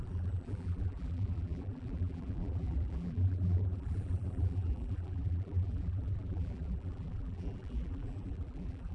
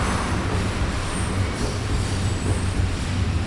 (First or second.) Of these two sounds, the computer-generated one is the first